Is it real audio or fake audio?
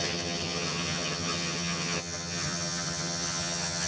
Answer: fake